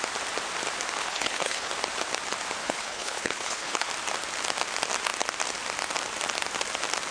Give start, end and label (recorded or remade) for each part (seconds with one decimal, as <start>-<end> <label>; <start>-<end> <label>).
0.0-1.0 recorded; 1.0-1.7 remade; 1.7-2.6 recorded; 2.6-3.9 remade; 3.9-7.1 recorded